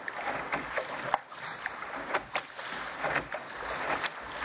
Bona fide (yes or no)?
yes